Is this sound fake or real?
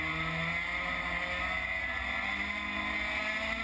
real